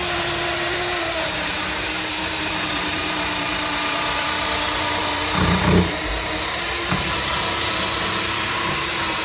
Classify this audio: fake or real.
fake